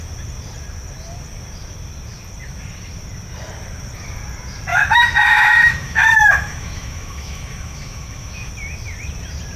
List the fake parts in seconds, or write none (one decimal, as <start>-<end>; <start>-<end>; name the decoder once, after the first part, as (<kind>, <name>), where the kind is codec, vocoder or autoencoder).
4.7-8.5 (autoencoder, DAC-VAE)